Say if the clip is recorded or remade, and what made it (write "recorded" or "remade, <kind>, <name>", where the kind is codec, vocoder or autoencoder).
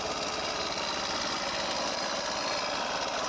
recorded